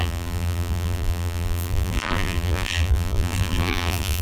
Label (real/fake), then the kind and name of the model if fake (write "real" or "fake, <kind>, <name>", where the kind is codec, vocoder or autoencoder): fake, vocoder, BigVGAN v2